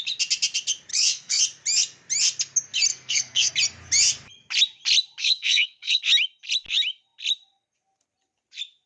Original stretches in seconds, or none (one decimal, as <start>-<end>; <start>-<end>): 0.0-0.9; 1.4-2.9; 3.5-5.2; 6.0-8.9